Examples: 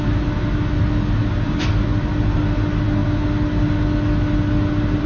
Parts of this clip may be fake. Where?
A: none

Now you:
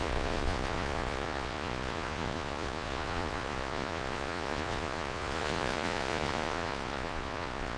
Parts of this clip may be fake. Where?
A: 0.0-7.8 (vocoder, Vocos)